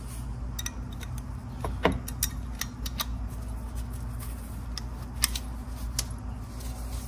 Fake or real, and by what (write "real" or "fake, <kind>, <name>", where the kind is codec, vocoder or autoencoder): real